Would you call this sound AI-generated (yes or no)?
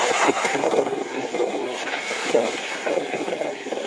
yes